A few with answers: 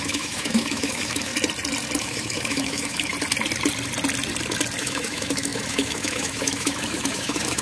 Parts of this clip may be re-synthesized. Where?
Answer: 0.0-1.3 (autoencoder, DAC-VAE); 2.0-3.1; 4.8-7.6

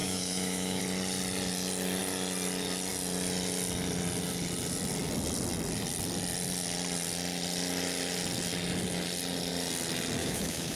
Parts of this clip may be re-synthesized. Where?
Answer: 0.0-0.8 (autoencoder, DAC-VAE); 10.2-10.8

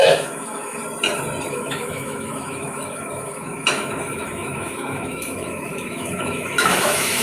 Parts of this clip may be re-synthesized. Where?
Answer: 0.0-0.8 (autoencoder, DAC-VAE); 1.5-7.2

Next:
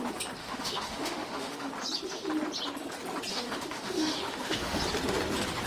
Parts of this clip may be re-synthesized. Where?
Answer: 0.4-1.7 (autoencoder, DAC-VAE); 3.3-4.8

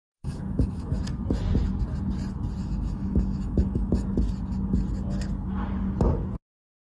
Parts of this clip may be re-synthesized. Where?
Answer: 0.0-1.0 (autoencoder, DAC-VAE); 2.6-4.1

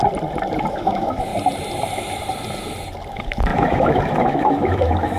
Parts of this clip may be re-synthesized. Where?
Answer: 0.7-1.3 (autoencoder, DAC-VAE); 3.1-5.2